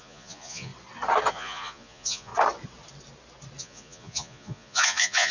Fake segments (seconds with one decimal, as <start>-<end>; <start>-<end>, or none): 0.0-0.7; 1.3-2.3; 3.6-5.3